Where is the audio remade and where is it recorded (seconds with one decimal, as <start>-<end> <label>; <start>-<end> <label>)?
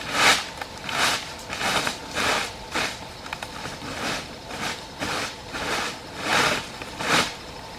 0.0-7.8 recorded